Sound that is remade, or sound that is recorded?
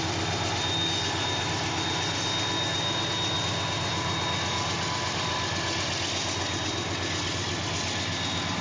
recorded